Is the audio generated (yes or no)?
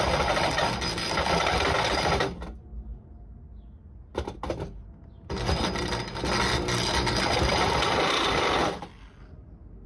no